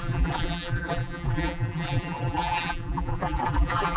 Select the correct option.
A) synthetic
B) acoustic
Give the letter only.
A